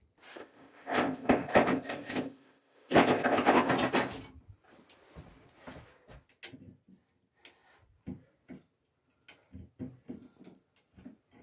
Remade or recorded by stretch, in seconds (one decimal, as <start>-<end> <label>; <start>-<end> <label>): 0.0-0.4 recorded; 0.4-3.7 remade; 3.7-11.4 recorded